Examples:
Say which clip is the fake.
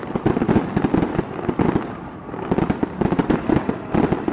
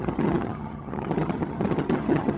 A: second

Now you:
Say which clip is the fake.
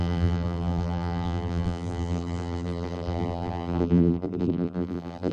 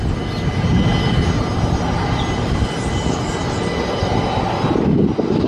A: first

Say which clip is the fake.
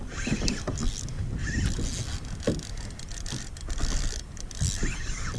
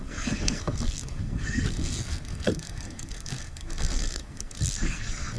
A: second